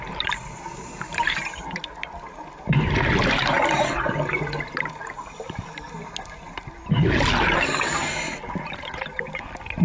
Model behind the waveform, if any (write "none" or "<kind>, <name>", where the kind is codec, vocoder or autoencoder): none